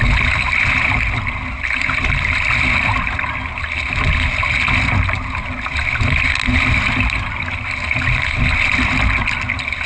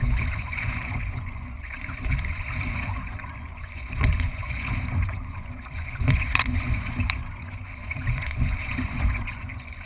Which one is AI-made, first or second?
second